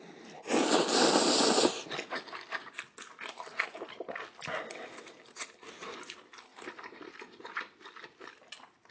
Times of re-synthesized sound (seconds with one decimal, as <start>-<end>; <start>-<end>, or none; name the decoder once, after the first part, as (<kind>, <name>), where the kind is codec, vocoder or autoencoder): none